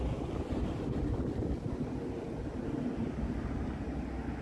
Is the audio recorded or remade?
recorded